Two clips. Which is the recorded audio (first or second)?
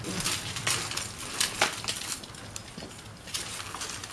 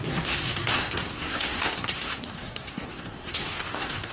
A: first